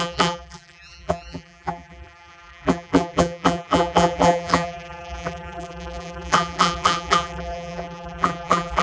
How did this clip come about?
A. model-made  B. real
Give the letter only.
A